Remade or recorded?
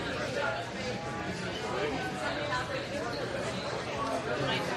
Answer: recorded